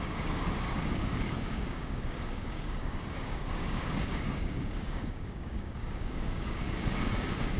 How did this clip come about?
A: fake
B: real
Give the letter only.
A